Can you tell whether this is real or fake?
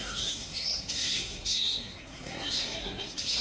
fake